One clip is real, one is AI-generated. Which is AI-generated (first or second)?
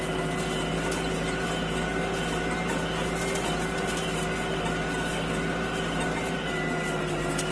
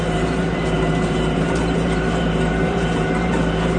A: second